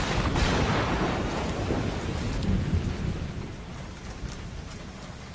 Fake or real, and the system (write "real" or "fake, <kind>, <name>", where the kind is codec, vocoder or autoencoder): real